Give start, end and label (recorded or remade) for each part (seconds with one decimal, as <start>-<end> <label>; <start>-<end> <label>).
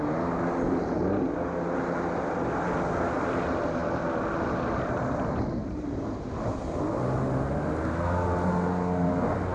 0.0-9.5 recorded